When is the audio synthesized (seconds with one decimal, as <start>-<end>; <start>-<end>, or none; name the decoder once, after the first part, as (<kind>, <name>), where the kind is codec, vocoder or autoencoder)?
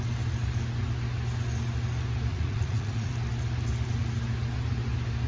2.3-3.1 (vocoder, Vocos)